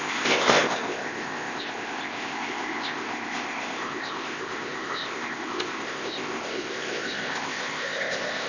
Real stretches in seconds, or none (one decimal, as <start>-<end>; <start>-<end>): none